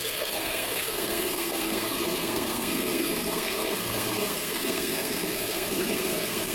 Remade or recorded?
remade